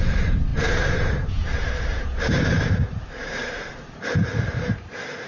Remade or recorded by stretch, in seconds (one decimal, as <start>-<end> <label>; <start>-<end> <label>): 0.0-5.3 remade